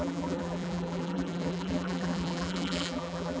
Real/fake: fake